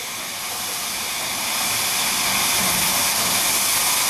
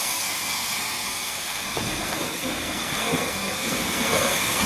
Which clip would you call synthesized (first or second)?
second